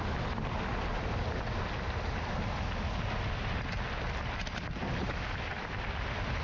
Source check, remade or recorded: recorded